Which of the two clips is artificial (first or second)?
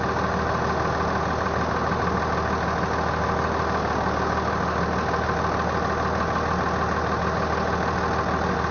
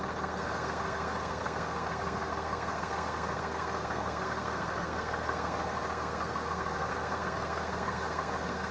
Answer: second